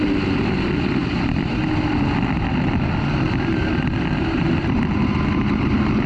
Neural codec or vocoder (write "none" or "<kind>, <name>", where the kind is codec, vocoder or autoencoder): none